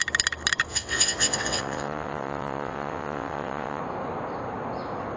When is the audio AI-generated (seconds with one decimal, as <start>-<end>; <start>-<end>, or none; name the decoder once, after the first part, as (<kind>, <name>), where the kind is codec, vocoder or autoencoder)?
0.7-3.8 (vocoder, WaveNeXt)